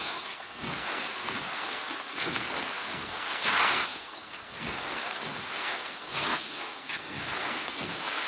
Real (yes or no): no